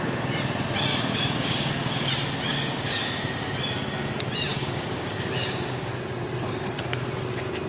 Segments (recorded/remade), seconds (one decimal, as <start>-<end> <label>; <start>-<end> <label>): 0.0-0.9 recorded; 0.9-2.1 remade; 2.1-2.5 recorded; 2.5-3.2 remade; 3.2-4.5 recorded; 4.5-5.9 remade; 5.9-7.7 recorded